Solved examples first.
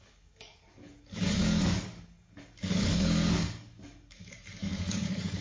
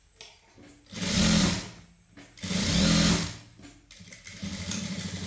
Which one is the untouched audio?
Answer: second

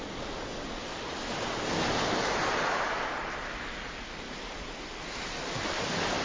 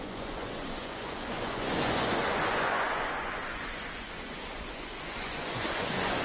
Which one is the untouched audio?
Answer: first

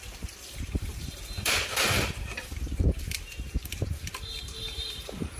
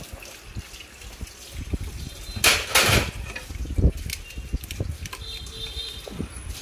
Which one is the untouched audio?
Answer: second